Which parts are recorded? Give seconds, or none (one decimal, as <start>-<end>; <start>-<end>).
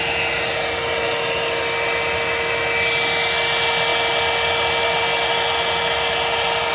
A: 0.0-6.7